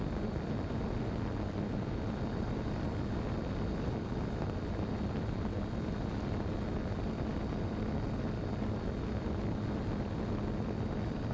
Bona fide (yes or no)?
yes